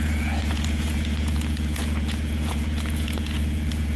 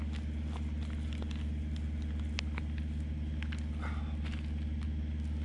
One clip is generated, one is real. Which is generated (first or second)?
first